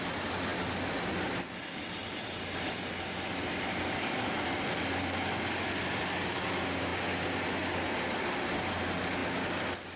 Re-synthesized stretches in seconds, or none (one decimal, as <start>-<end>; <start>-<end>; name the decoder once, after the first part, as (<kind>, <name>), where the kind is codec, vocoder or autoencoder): none